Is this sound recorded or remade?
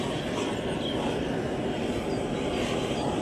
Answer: recorded